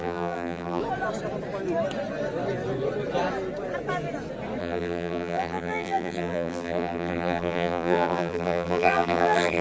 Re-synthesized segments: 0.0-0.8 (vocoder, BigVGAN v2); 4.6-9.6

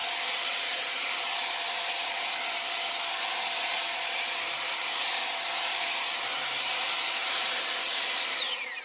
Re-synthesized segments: 0.0-7.9 (vocoder, BigVGAN v2)

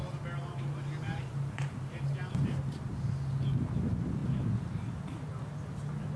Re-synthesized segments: 0.0-3.0 (vocoder, BigVGAN v2)